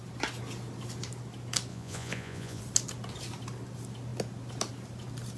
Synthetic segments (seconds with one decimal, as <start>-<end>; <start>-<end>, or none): 1.7-2.6